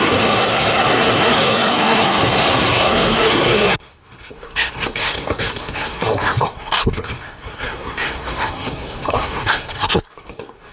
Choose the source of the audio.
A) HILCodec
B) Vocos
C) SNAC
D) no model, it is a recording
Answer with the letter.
C